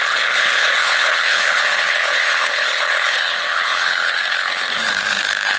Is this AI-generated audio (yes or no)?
yes